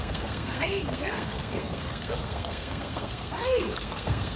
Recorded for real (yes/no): no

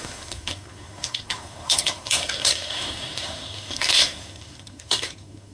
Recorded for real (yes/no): no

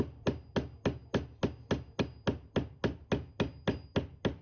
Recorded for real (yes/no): yes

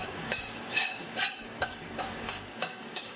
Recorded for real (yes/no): no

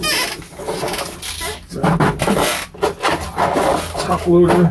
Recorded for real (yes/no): yes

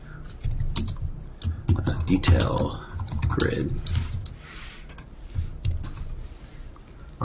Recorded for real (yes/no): yes